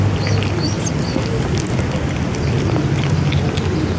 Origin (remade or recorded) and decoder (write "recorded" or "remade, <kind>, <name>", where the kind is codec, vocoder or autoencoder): recorded